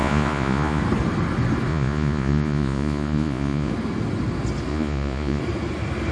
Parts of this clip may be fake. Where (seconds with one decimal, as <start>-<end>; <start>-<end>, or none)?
0.0-0.8; 1.7-3.7; 4.7-5.4